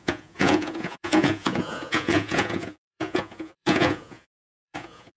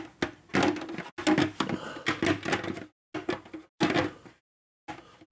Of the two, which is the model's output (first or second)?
first